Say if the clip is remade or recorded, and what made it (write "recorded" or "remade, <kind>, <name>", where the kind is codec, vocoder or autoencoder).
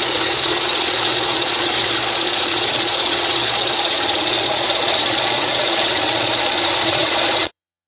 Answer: remade, vocoder, Vocos